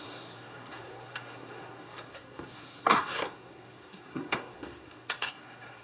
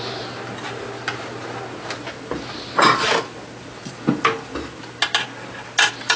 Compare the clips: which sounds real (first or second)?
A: second